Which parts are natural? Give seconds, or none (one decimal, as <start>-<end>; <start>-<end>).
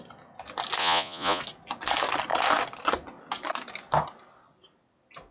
0.0-0.8; 1.4-5.3